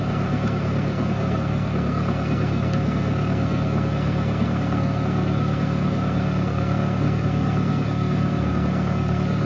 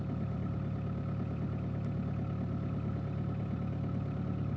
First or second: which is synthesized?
first